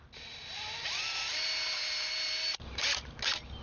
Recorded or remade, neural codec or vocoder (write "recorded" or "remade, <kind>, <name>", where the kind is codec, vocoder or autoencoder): recorded